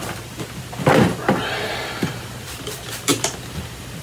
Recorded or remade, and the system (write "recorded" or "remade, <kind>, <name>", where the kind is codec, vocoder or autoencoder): remade, vocoder, BigVGAN v2